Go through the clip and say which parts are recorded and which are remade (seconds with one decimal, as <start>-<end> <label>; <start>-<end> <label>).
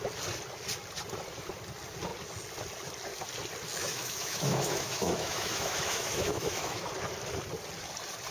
0.0-3.8 recorded; 3.8-6.8 remade; 6.8-8.3 recorded